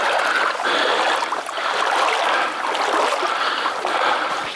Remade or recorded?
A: recorded